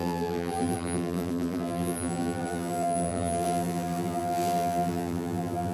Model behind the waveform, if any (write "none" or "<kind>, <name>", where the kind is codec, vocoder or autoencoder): vocoder, BigVGAN v2